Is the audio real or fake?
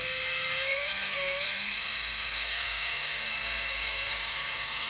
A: fake